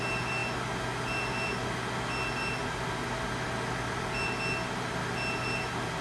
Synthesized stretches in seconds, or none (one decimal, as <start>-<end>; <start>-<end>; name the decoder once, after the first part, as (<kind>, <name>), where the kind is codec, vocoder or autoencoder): none